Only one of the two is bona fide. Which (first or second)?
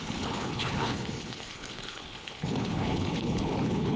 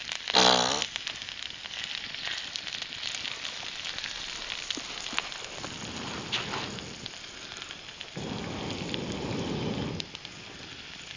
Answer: second